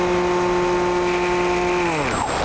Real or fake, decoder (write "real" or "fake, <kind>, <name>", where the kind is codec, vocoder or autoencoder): real